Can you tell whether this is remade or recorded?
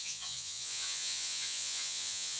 remade